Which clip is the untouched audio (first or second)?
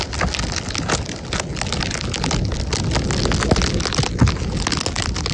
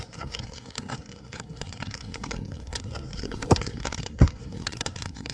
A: first